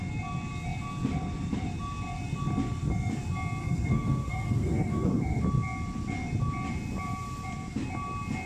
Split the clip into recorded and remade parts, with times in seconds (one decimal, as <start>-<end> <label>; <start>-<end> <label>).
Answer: 0.0-3.6 recorded; 3.6-5.4 remade; 5.4-8.5 recorded